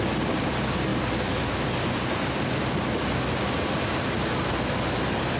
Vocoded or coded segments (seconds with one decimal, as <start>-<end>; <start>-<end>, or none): none